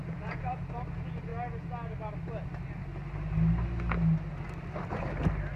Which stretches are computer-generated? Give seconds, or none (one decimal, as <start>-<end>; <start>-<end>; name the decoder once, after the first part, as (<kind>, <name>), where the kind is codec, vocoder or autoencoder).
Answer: 0.0-0.5 (vocoder, Vocos)